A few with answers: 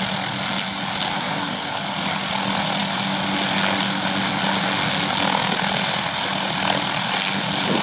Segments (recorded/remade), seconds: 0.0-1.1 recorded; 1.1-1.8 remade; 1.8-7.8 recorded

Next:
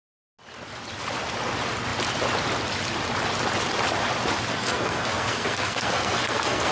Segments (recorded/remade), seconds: 0.0-4.5 recorded; 4.5-6.7 remade